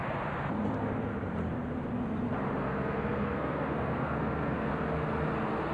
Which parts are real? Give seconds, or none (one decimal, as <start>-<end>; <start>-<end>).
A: 0.0-2.6; 4.7-5.7